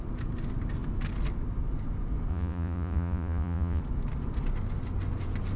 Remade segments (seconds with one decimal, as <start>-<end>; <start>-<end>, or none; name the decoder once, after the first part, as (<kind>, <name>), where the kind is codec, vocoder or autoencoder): 2.3-3.8 (vocoder, Vocos)